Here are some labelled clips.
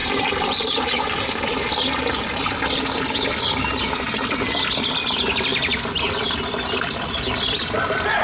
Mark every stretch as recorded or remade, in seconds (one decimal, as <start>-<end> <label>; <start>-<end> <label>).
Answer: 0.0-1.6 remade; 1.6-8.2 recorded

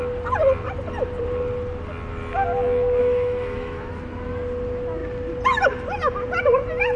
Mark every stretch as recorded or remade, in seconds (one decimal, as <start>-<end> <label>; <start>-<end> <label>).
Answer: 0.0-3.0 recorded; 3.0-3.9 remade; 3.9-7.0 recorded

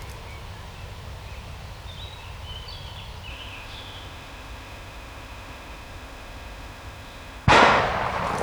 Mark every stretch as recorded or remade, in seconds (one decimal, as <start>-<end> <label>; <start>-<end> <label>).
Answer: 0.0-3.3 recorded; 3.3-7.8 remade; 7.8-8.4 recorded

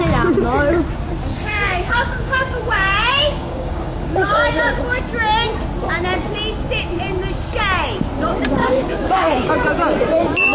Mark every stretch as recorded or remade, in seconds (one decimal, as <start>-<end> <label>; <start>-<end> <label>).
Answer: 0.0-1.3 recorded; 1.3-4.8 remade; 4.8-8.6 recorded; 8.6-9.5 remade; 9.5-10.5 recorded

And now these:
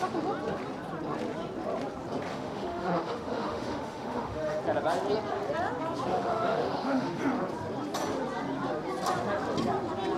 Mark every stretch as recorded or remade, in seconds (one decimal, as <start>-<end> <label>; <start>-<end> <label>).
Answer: 0.0-2.3 recorded; 2.3-4.6 remade; 4.6-6.1 recorded; 6.1-7.2 remade; 7.2-10.2 recorded

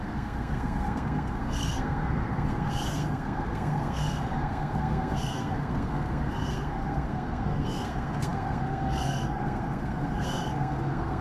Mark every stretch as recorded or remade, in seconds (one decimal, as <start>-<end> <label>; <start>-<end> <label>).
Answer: 0.0-11.2 remade

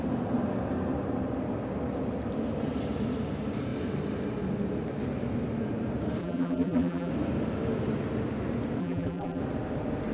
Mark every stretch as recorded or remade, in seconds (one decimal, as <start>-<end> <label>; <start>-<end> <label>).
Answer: 0.0-6.2 recorded; 6.2-7.1 remade; 7.1-8.8 recorded; 8.8-9.4 remade; 9.4-10.1 recorded